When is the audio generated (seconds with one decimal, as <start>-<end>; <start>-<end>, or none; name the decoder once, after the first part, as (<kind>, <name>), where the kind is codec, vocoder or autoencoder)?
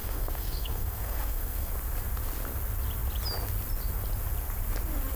0.0-1.7 (codec, SNAC)